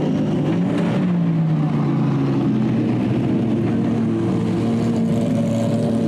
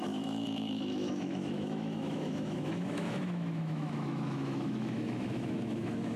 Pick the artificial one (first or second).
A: second